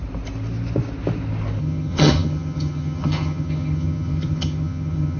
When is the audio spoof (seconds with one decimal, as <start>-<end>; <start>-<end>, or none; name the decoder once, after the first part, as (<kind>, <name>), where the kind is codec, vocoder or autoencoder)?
1.6-5.2 (vocoder, HiFi-GAN)